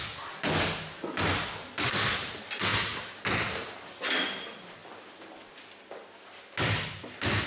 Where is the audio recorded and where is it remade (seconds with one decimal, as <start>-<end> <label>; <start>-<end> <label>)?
0.0-7.5 recorded